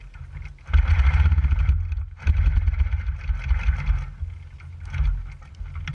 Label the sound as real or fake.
real